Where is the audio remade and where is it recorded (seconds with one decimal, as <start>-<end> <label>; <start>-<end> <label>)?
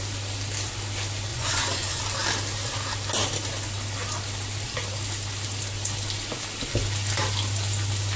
0.0-1.3 recorded; 1.3-2.0 remade; 2.0-8.2 recorded